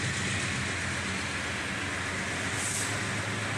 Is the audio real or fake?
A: real